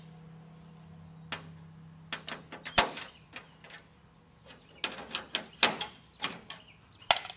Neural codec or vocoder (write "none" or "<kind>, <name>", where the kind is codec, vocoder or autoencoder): none